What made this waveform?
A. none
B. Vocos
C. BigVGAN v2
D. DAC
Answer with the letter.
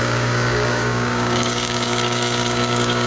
D